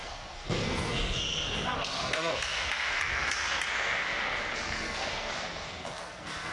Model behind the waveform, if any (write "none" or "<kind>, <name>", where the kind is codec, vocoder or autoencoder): codec, SNAC